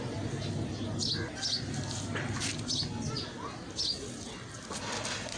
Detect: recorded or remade recorded